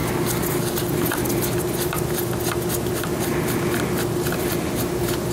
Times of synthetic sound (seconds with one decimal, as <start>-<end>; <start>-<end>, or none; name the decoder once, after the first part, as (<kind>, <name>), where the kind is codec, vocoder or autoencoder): none